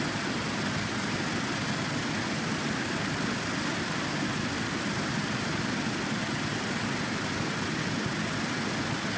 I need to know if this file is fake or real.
real